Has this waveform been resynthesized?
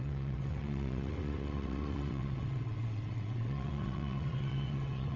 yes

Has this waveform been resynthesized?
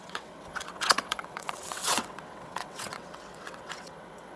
yes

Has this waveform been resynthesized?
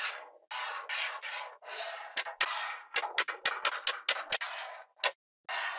no